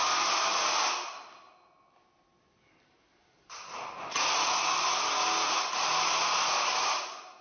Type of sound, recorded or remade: recorded